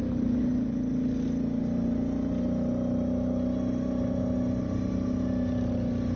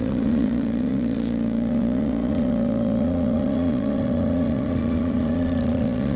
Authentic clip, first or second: first